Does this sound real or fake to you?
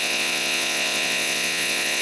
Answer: fake